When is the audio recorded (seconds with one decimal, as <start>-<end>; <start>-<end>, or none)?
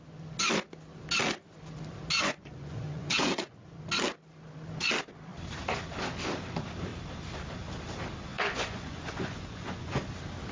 0.0-2.2; 3.5-8.3; 10.0-10.5